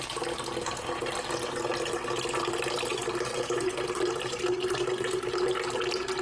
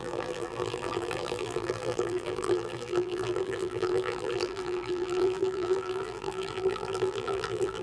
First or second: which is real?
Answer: first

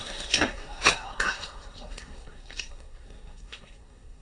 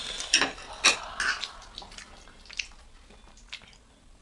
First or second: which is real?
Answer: second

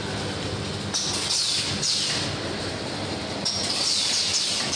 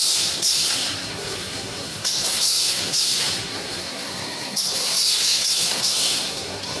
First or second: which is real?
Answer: first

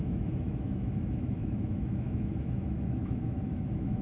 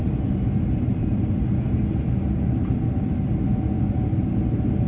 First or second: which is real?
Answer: second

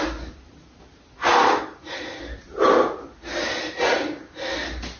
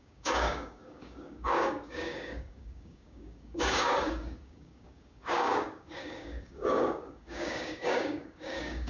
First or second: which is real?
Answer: first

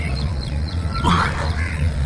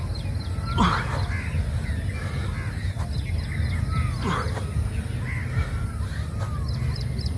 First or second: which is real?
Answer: second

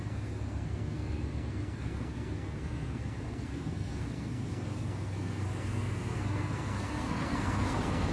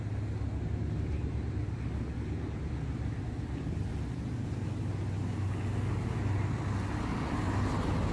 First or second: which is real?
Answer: second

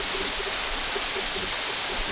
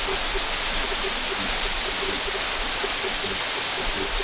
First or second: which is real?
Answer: second